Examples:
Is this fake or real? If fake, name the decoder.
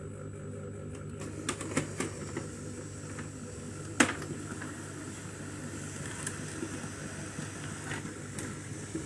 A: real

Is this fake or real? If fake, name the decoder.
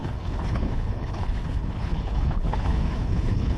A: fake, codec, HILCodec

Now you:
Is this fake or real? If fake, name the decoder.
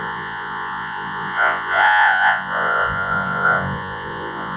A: fake, vocoder, Vocos